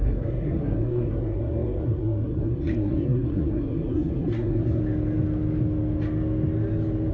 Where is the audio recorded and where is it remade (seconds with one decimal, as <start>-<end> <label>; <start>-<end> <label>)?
0.0-4.8 remade; 4.8-7.1 recorded